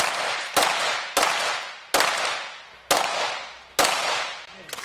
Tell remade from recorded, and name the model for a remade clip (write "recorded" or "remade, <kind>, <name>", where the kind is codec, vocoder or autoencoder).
recorded